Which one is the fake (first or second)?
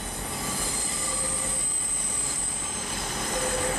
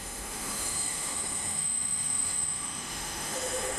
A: second